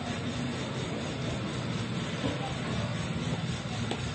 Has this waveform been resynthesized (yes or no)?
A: no